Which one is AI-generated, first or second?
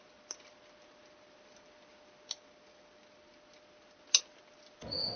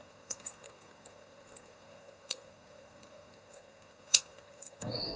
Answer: second